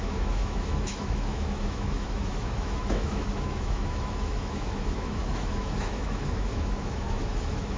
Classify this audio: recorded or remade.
remade